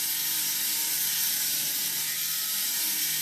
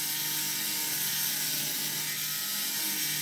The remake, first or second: first